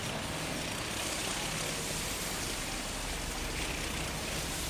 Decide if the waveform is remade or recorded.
recorded